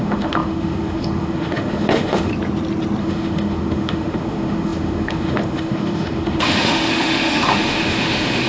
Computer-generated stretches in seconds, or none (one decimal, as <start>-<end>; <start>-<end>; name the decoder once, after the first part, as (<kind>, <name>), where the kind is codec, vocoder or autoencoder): 0.0-2.3 (autoencoder, DAC-VAE); 3.0-8.5